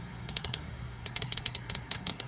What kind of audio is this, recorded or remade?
remade